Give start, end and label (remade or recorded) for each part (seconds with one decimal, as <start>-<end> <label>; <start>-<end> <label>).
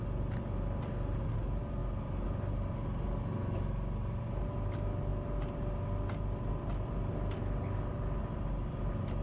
0.0-9.2 recorded